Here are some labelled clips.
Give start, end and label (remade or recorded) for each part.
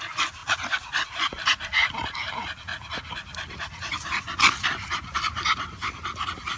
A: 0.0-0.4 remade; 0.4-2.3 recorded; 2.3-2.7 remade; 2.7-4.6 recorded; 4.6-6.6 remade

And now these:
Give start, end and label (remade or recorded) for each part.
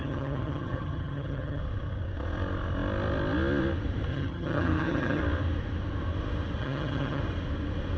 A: 0.0-1.6 remade; 1.6-4.1 recorded; 4.1-5.2 remade; 5.2-6.6 recorded; 6.6-7.2 remade; 7.2-8.0 recorded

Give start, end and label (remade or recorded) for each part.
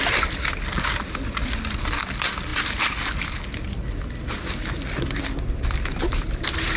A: 0.0-6.8 recorded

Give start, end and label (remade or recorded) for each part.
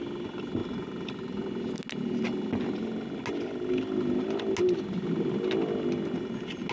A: 0.0-6.7 recorded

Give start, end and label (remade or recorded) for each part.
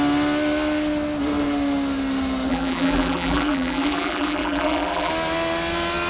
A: 0.0-2.5 recorded; 2.5-5.1 remade; 5.1-6.1 recorded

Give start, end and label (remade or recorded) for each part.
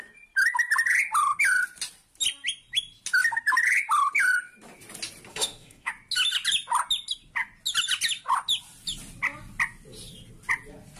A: 0.0-5.3 recorded; 5.3-5.9 remade; 5.9-11.0 recorded